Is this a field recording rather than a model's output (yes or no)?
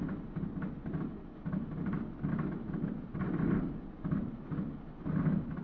yes